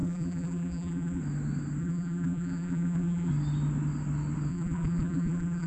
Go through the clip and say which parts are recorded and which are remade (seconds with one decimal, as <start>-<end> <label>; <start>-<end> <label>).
0.0-1.2 remade; 1.2-1.8 recorded; 1.8-3.3 remade; 3.3-4.5 recorded; 4.5-5.7 remade